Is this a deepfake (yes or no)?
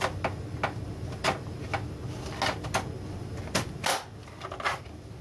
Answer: no